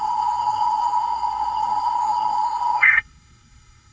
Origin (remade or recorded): remade